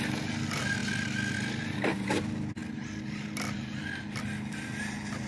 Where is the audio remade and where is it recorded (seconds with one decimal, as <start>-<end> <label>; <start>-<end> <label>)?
0.0-5.3 recorded